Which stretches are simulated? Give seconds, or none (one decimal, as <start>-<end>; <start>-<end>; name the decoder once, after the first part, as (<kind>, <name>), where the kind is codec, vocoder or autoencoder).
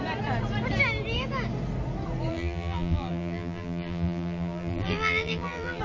2.3-5.8 (vocoder, BigVGAN v2)